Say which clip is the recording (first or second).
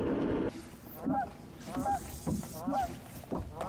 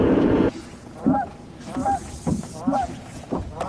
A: first